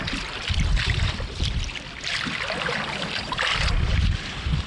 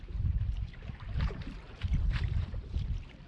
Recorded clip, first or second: first